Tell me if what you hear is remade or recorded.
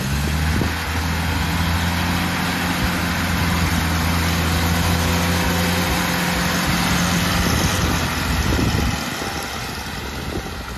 recorded